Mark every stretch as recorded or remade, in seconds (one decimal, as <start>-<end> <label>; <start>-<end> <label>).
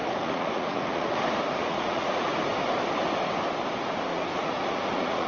0.0-1.2 remade; 1.2-1.6 recorded; 1.6-2.3 remade; 2.3-4.1 recorded; 4.1-5.3 remade